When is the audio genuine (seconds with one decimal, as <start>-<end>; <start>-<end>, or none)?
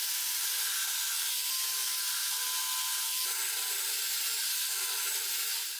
0.0-5.8